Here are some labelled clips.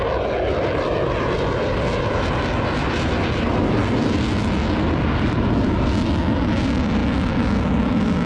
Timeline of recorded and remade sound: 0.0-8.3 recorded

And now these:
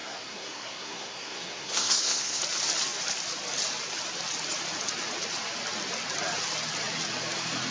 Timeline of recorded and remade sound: 0.0-2.4 remade; 2.4-7.7 recorded

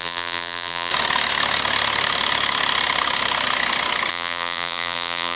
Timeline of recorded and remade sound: 0.0-0.9 remade; 0.9-4.1 recorded; 4.1-5.4 remade

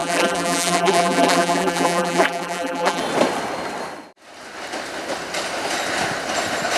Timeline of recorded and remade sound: 0.0-3.0 remade; 3.0-6.8 recorded